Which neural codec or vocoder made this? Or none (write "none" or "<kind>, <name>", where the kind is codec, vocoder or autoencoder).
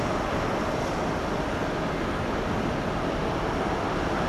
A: none